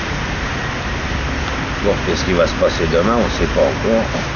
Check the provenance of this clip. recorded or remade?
recorded